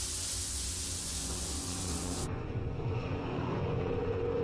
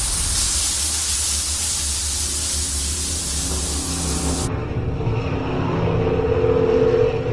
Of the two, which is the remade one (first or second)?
first